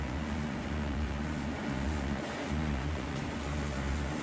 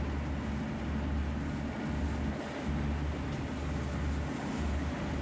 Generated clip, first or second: first